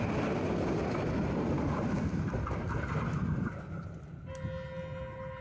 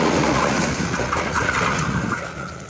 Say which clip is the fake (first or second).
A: second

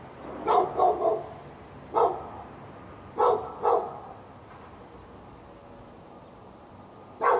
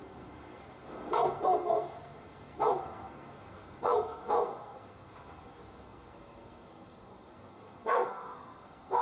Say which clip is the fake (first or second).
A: second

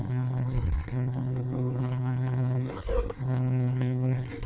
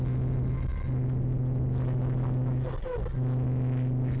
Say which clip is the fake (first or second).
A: first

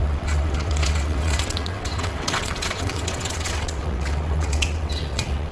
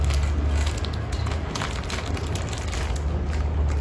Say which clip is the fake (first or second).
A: first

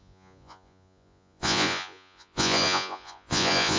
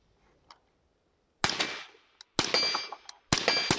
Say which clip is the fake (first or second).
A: first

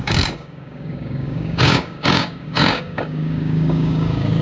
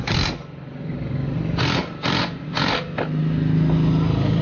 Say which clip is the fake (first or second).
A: first